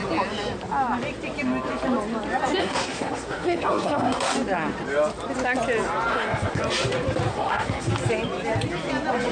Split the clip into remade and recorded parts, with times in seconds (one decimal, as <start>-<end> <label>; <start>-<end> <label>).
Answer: 0.0-2.6 recorded; 2.6-4.3 remade; 4.3-6.1 recorded; 6.1-6.6 remade; 6.6-7.3 recorded; 7.3-7.9 remade; 7.9-9.3 recorded